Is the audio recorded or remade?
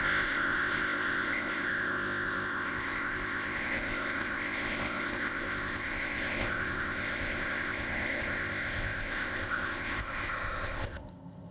remade